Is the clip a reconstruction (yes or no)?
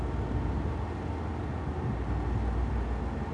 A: no